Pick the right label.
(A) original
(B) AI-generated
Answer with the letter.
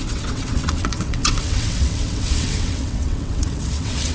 B